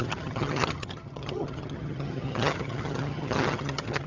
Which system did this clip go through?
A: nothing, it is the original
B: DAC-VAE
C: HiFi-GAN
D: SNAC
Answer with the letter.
C